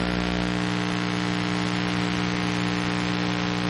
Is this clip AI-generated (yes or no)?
no